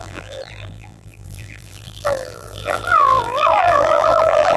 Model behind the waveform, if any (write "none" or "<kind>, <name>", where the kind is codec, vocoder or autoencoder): vocoder, BigVGAN v2